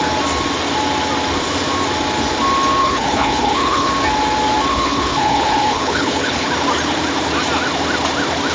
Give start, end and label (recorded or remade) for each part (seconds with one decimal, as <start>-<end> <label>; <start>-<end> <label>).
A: 0.0-2.8 recorded; 2.8-3.9 remade; 3.9-4.7 recorded; 4.7-6.5 remade; 6.5-8.5 recorded